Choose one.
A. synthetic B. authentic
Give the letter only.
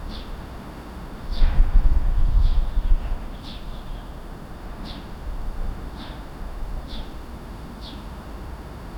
A